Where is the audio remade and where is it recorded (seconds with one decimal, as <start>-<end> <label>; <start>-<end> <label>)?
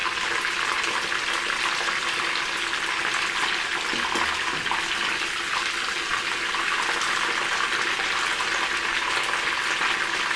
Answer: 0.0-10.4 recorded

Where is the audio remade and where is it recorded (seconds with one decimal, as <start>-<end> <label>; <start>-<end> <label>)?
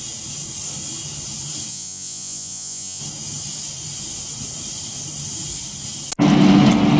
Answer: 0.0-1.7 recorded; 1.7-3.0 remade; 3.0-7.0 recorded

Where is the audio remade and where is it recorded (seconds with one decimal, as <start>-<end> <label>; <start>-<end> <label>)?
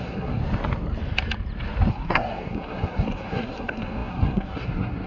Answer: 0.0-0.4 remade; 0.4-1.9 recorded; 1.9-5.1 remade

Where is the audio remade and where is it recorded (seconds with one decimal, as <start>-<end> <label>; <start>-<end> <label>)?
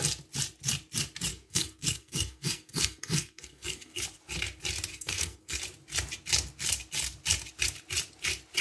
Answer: 0.0-1.3 recorded; 1.3-4.0 remade; 4.0-4.9 recorded; 4.9-5.6 remade; 5.6-8.6 recorded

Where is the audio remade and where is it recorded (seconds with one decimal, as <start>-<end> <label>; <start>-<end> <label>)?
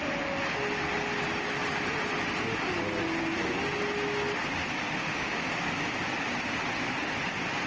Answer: 0.0-4.8 recorded; 4.8-5.5 remade; 5.5-7.7 recorded